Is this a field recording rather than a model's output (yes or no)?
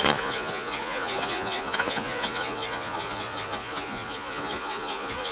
no